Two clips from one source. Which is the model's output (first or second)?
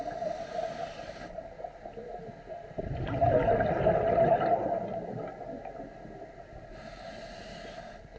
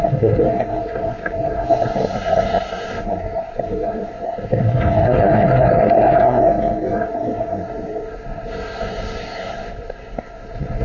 second